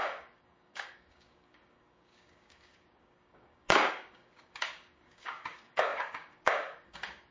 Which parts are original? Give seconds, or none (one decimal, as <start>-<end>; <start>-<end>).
none